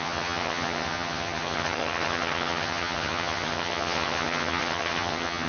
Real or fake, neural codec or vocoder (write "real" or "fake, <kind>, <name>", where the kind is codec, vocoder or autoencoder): fake, vocoder, HiFi-GAN